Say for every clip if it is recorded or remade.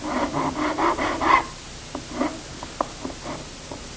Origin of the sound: recorded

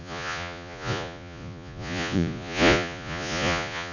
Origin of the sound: remade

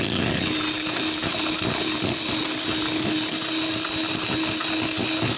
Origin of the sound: recorded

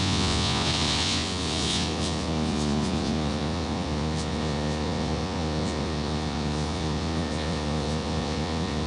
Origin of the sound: remade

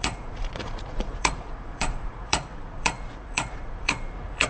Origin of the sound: remade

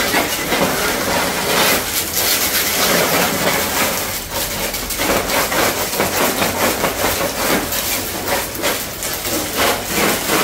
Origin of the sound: recorded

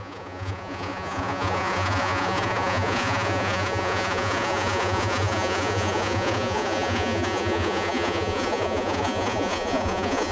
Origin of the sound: remade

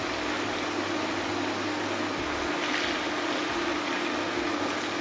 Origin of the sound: recorded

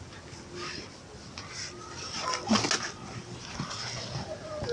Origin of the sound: recorded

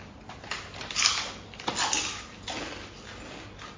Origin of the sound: recorded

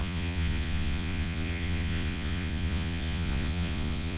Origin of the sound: remade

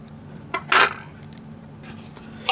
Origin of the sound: recorded